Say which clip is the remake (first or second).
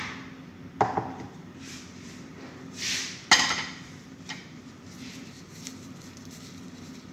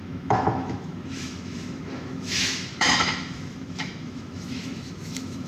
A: second